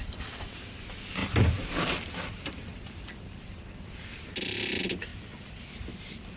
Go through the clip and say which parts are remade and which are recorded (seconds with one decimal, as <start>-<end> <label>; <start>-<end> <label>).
0.0-1.2 recorded; 1.2-4.2 remade; 4.2-5.1 recorded; 5.1-6.4 remade

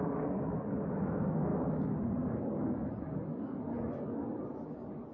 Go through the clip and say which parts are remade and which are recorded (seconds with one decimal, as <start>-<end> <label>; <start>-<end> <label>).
0.0-5.1 recorded

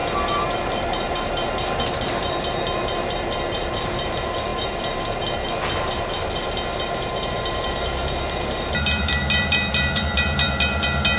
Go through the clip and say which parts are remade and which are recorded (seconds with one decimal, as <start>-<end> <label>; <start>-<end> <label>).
0.0-11.2 remade

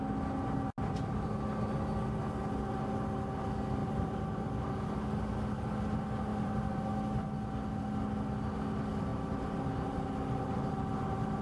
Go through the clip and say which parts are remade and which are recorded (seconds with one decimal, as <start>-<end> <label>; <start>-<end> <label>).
0.0-3.8 recorded; 3.8-4.7 remade; 4.7-6.3 recorded; 6.3-6.9 remade; 6.9-11.4 recorded

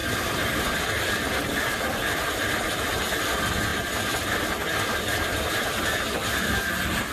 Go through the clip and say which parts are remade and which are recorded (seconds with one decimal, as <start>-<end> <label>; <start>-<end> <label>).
0.0-0.8 remade; 0.8-7.1 recorded

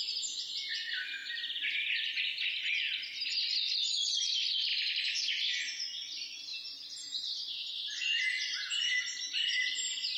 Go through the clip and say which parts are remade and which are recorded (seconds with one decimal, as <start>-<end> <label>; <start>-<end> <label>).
0.0-1.2 recorded; 1.2-2.5 remade; 2.5-4.7 recorded; 4.7-5.3 remade; 5.3-6.5 recorded; 6.5-9.0 remade; 9.0-10.2 recorded